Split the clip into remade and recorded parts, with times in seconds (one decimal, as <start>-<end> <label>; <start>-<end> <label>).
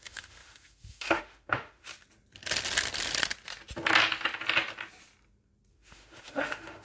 0.0-1.9 remade; 1.9-5.7 recorded; 5.7-6.8 remade